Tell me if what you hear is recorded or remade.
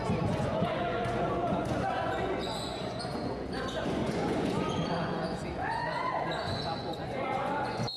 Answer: remade